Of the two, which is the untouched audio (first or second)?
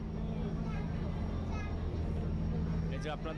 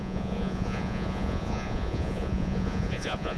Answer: first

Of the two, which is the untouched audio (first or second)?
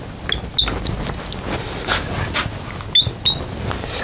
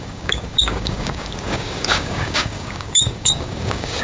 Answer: first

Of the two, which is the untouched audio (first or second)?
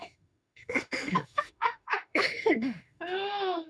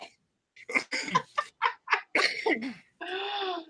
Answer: second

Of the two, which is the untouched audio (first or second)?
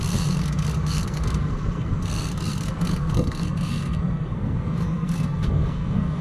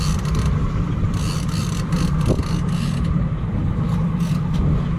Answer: second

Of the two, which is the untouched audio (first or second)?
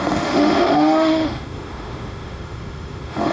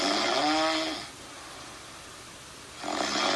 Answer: second